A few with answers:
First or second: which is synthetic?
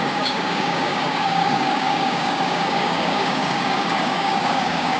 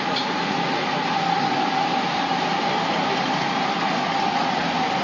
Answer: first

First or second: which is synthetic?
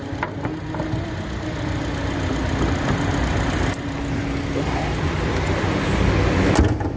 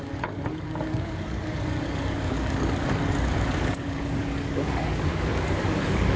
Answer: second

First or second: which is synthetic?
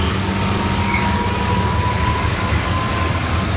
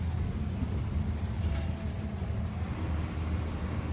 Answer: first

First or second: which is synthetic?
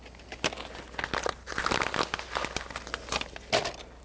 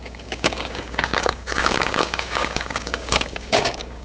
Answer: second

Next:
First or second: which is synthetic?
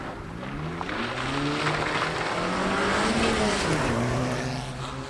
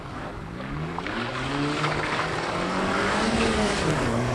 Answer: second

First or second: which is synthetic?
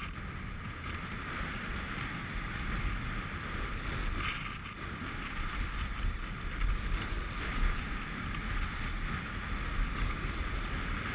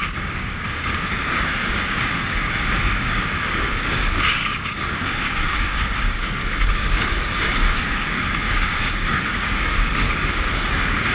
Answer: second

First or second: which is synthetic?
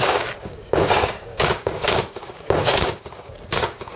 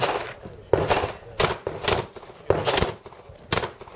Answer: first